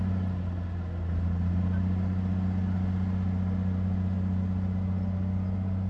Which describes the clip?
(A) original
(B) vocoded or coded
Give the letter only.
A